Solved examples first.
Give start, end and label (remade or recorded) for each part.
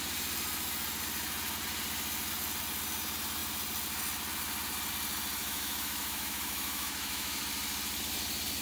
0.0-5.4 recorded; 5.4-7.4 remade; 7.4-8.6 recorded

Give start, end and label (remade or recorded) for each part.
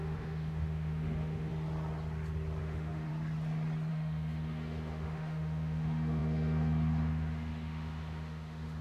0.0-1.5 remade; 1.5-2.6 recorded; 2.6-3.1 remade; 3.1-3.9 recorded; 3.9-8.8 remade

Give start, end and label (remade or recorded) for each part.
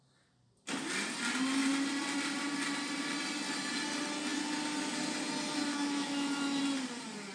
0.0-5.7 recorded; 5.7-6.6 remade; 6.6-7.3 recorded